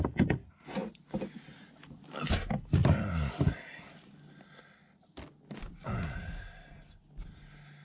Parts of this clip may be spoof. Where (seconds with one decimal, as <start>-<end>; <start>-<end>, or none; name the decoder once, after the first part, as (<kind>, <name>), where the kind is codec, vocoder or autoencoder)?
none